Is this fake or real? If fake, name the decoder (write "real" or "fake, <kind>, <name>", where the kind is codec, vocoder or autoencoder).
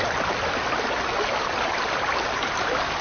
real